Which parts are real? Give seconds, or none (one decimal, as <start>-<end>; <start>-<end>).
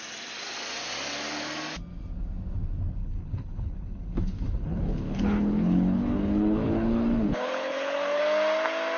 0.0-3.0; 8.2-9.0